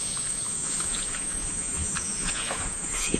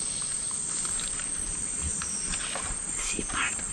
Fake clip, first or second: first